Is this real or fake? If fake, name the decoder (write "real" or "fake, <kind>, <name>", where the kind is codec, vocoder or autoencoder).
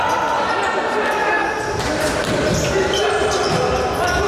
real